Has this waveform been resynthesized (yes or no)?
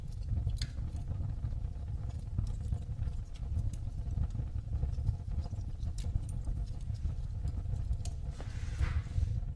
no